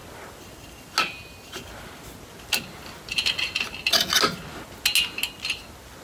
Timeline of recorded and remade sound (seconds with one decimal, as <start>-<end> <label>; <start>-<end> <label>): 0.0-6.0 recorded